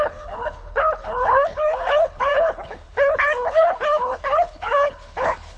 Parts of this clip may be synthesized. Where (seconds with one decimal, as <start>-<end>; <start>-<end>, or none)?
0.0-5.6